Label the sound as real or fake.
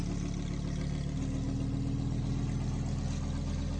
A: real